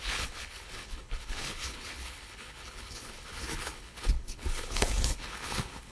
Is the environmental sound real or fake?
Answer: fake